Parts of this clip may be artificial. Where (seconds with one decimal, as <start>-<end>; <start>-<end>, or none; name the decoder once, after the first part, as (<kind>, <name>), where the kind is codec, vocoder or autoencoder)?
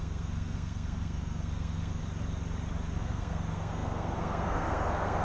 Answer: 0.0-2.0 (codec, SNAC); 3.0-5.2